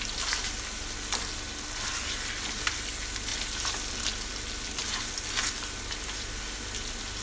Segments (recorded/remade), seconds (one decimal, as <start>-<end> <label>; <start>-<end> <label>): 0.0-7.2 recorded

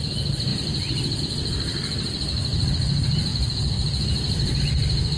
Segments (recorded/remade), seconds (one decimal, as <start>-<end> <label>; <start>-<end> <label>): 0.0-0.5 recorded; 0.5-1.2 remade; 1.2-3.3 recorded; 3.3-4.6 remade; 4.6-5.2 recorded